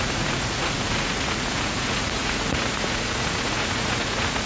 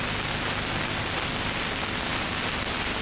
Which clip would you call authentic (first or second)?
second